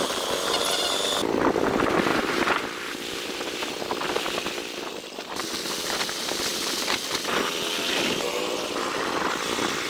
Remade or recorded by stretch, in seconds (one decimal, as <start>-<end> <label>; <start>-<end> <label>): 0.0-2.1 recorded; 2.1-3.7 remade; 3.7-9.9 recorded